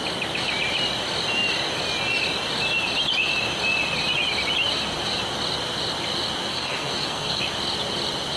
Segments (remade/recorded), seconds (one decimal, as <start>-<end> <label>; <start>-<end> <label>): 0.0-6.5 recorded; 6.5-7.4 remade; 7.4-8.4 recorded